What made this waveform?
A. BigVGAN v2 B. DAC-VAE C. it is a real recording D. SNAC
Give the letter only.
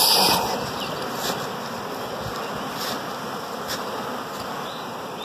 C